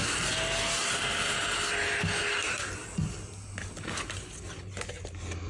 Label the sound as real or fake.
real